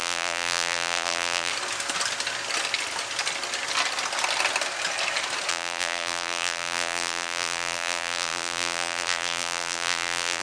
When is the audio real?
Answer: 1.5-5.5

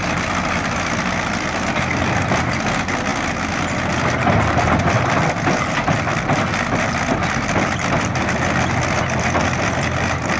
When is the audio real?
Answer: 3.1-5.6